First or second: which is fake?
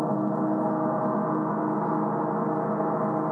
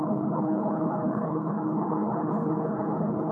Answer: second